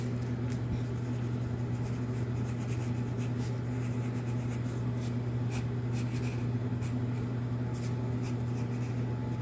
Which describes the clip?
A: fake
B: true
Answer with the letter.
B